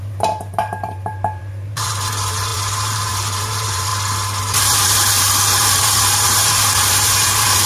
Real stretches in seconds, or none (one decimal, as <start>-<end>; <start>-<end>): 3.9-4.4